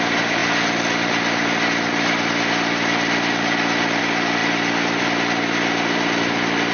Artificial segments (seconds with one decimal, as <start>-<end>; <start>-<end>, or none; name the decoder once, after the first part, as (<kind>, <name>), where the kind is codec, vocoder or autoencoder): none